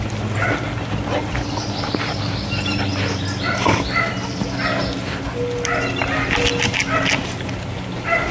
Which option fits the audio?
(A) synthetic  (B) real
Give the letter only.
B